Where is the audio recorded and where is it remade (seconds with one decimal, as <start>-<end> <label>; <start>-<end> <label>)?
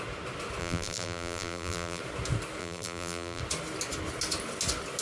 0.0-0.6 recorded; 0.6-2.0 remade; 2.0-2.6 recorded; 2.6-3.4 remade; 3.4-5.0 recorded